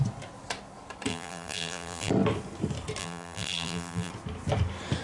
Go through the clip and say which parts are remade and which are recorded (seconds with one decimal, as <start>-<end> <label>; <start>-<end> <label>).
0.0-1.1 recorded; 1.1-2.1 remade; 2.1-3.0 recorded; 3.0-4.1 remade; 4.1-5.0 recorded